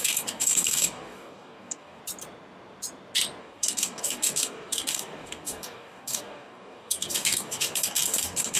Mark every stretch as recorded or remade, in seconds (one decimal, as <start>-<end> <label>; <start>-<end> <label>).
0.0-2.0 remade; 2.0-3.4 recorded; 3.4-8.6 remade